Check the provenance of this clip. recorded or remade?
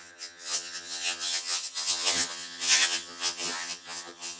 remade